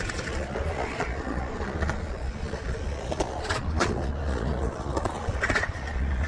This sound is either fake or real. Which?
fake